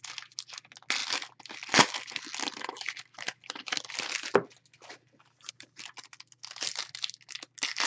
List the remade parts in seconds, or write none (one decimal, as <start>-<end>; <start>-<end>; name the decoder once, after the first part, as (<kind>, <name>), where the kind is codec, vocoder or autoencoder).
none